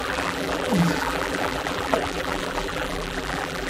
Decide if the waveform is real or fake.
fake